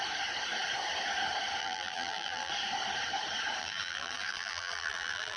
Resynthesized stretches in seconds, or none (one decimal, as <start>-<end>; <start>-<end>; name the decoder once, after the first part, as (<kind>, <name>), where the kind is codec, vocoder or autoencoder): 1.6-2.5 (vocoder, BigVGAN v2); 3.6-5.4